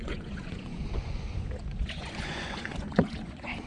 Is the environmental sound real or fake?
fake